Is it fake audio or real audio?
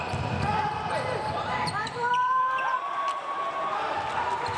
fake